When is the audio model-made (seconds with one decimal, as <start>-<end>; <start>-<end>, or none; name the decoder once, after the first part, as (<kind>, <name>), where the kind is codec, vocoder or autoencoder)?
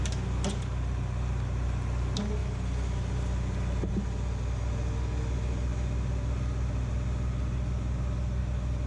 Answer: none